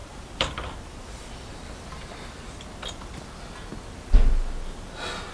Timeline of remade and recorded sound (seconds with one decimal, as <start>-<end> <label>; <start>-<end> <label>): 0.0-1.9 remade; 1.9-5.3 recorded